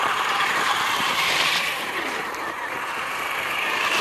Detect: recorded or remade remade